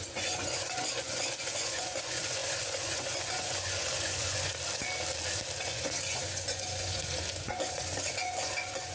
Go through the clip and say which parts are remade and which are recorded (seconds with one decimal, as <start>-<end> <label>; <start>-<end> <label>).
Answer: 0.0-4.5 remade; 4.5-5.6 recorded; 5.6-8.9 remade